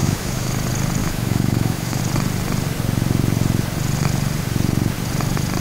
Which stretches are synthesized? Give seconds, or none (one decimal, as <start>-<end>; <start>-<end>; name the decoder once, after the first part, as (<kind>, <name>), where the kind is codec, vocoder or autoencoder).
0.0-0.5 (autoencoder, DAC-VAE); 1.0-2.0